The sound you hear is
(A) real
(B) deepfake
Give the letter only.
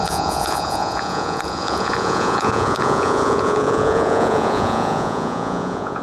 B